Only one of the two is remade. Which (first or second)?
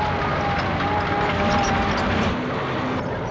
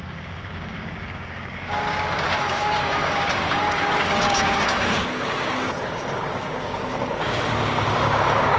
second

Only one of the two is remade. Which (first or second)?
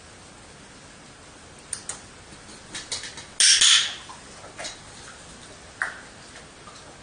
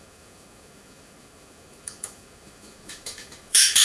second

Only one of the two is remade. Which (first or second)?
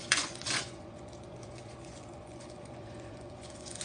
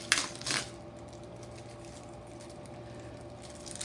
first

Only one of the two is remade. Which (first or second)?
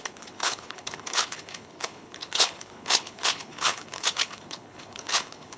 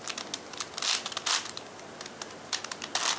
first